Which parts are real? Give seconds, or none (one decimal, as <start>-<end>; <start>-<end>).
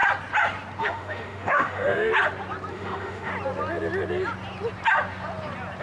0.0-0.8; 2.1-2.7; 3.3-5.8